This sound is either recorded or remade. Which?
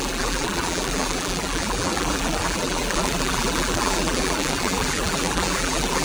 remade